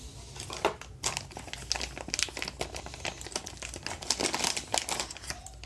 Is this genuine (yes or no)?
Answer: yes